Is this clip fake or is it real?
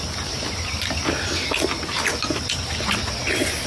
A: real